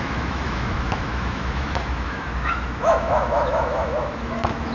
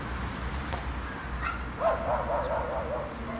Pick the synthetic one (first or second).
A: first